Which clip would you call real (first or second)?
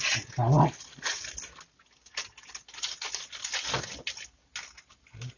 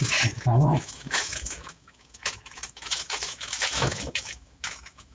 first